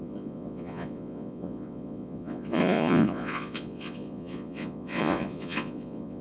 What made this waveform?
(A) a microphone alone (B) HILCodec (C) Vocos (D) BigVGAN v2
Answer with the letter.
C